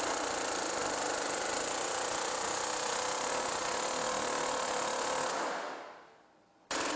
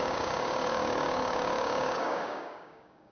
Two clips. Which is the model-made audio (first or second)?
second